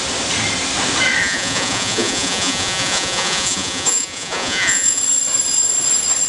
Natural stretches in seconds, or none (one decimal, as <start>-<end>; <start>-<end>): 0.0-1.2; 5.0-6.3